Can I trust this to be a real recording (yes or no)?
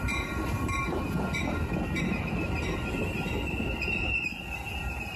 yes